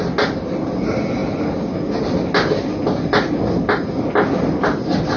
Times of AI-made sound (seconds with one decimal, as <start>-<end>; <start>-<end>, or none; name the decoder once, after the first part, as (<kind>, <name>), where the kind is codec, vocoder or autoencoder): none